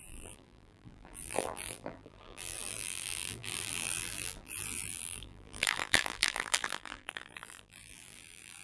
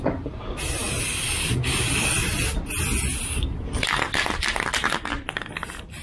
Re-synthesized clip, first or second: first